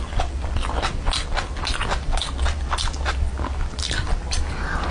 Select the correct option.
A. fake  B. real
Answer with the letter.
B